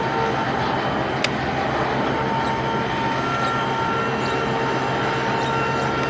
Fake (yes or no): no